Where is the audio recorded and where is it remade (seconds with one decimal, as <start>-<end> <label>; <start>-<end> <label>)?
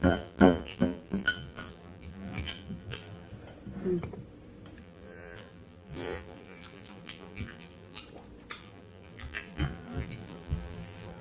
0.0-3.3 remade; 3.3-4.8 recorded; 4.8-8.0 remade; 8.0-8.6 recorded; 8.6-11.2 remade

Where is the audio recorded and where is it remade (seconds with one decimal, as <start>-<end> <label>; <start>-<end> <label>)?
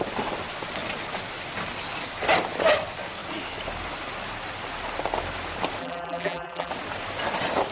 0.0-5.8 recorded; 5.8-6.7 remade; 6.7-7.7 recorded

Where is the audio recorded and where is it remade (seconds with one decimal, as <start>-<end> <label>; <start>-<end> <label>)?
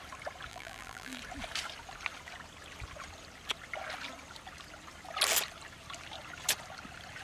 0.0-0.5 recorded; 0.5-1.2 remade; 1.2-7.2 recorded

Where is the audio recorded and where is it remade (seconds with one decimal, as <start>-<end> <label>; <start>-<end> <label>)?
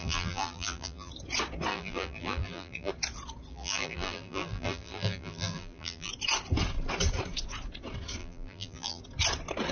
0.0-1.1 remade; 1.1-1.7 recorded; 1.7-2.9 remade; 2.9-3.5 recorded; 3.5-6.1 remade; 6.1-8.2 recorded; 8.2-9.0 remade; 9.0-9.7 recorded